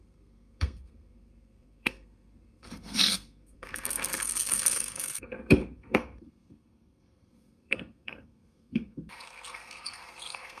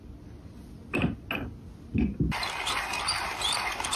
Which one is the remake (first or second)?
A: first